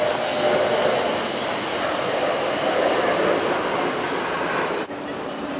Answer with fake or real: real